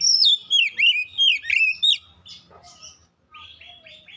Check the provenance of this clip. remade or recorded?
recorded